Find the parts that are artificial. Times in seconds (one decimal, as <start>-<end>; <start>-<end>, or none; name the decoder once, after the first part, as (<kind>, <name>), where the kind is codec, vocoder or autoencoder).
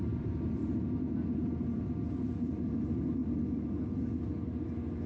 0.0-0.6 (vocoder, BigVGAN v2); 1.4-3.2